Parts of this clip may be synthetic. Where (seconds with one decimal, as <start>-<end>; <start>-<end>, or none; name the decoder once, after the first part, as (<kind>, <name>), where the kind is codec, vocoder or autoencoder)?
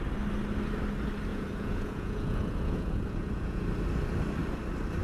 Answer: 1.3-3.6 (vocoder, Vocos)